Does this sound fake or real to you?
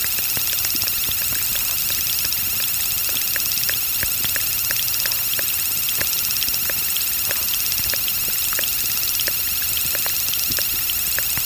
real